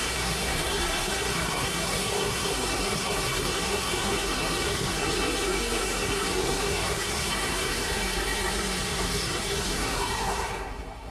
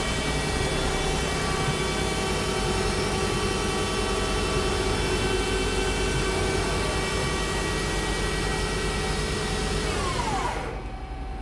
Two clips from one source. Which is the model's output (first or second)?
first